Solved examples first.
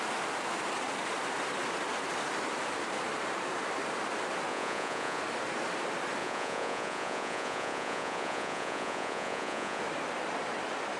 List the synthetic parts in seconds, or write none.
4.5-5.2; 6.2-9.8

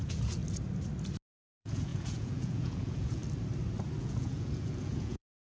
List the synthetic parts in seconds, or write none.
0.0-0.4; 1.3-3.2; 4.0-5.4

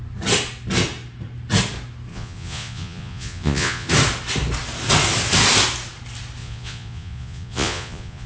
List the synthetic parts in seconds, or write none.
2.1-3.9; 6.4-8.3

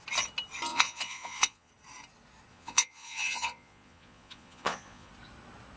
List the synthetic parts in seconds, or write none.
0.7-1.7; 2.5-5.1